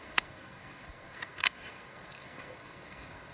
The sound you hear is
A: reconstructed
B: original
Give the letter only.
A